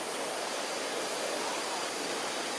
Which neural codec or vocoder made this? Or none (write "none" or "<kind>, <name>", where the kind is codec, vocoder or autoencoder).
none